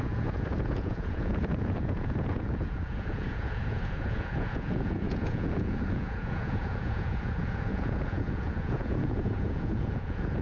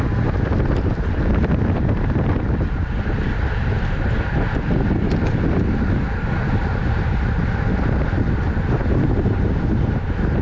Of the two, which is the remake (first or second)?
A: first